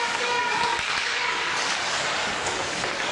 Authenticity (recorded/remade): remade